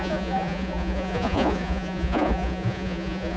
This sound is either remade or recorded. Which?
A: remade